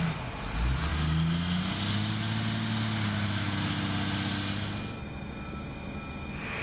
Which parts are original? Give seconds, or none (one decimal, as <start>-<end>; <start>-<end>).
0.0-6.6